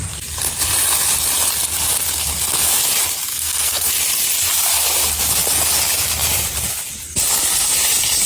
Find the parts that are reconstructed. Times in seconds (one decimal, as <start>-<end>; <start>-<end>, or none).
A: 3.3-3.9